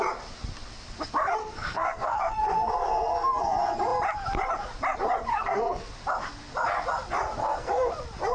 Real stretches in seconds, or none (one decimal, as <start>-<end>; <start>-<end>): 0.0-1.4; 2.7-5.3; 5.9-7.4; 7.9-8.3